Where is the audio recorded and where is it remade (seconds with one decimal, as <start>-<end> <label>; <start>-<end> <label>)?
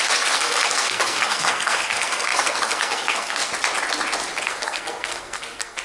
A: 0.0-3.5 remade; 3.5-4.4 recorded; 4.4-5.8 remade